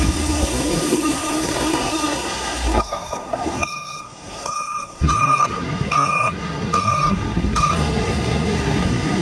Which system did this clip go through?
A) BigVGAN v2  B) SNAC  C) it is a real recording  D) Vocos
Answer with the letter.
B